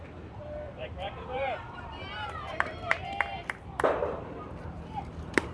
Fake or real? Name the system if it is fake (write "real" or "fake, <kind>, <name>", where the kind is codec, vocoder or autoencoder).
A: fake, vocoder, BigVGAN v2